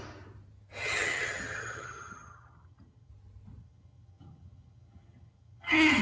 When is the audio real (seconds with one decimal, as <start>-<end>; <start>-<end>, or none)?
0.0-0.8; 3.1-3.6